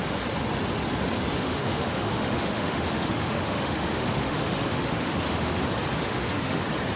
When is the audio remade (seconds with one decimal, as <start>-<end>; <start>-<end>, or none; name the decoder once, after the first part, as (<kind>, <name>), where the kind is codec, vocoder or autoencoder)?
1.4-5.6 (autoencoder, DAC-VAE); 6.0-6.6